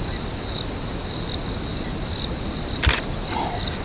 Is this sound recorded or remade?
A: recorded